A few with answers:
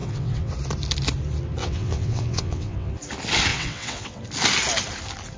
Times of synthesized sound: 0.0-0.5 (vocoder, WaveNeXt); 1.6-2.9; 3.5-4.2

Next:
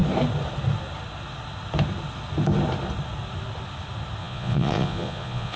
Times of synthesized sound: 4.2-5.6 (vocoder, Vocos)

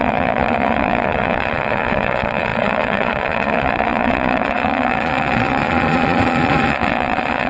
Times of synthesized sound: 0.0-7.5 (vocoder, Vocos)

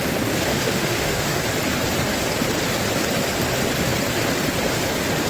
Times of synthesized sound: 0.5-1.4 (autoencoder, DAC-VAE)

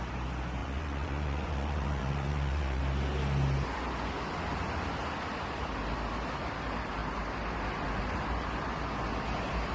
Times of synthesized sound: 0.6-2.8 (vocoder, Vocos)